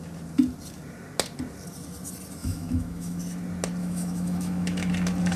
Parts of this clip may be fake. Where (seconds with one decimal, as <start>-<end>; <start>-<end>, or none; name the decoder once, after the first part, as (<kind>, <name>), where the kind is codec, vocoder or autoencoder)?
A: 2.4-3.2 (autoencoder, DAC-VAE); 3.8-4.9